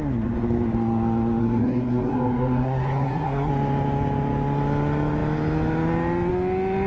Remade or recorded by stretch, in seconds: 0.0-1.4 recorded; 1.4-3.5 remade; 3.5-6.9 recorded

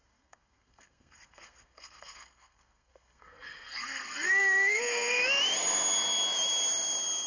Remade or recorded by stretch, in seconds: 0.0-5.2 remade; 5.2-7.3 recorded

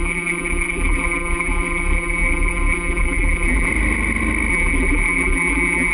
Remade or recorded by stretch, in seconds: 0.0-3.7 remade; 3.7-4.5 recorded; 4.5-5.9 remade

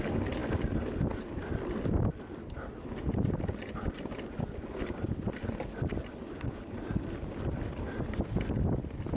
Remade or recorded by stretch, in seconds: 0.0-9.2 recorded

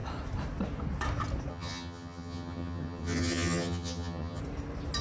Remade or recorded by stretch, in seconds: 0.0-1.5 recorded; 1.5-4.4 remade; 4.4-5.0 recorded

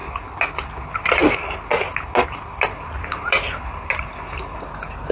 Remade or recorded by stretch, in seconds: 0.0-5.1 recorded

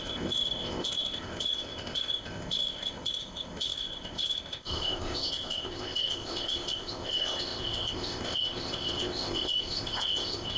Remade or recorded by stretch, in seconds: 0.0-10.6 remade